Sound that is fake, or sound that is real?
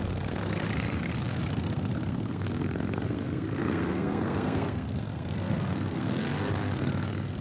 fake